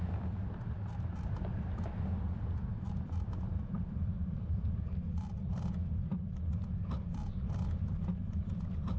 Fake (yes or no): yes